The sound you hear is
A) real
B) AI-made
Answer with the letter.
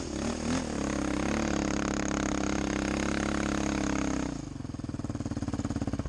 A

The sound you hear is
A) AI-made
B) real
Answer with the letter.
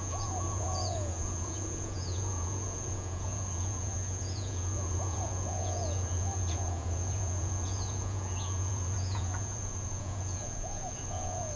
A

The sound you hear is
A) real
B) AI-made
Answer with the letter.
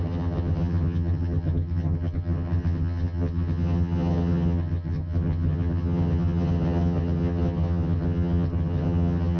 B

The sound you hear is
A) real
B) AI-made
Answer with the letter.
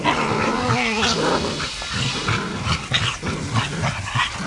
A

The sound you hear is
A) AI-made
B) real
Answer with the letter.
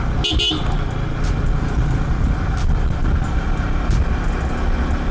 B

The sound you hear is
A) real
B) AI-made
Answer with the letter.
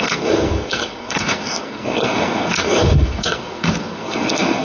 B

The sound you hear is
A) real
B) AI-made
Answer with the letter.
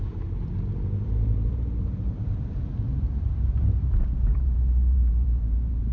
B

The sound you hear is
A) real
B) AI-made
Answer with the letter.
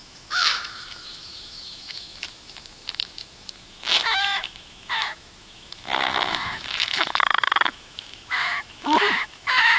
B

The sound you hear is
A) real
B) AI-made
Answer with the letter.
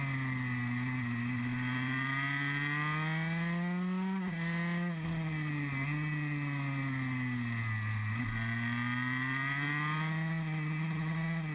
A